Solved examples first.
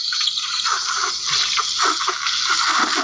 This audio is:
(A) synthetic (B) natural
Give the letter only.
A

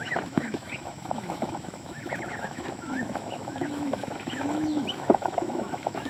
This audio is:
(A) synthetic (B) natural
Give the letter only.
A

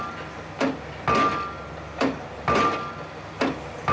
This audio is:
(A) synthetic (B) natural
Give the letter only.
B